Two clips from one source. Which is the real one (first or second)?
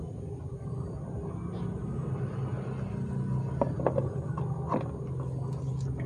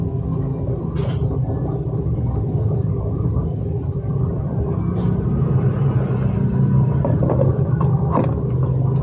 first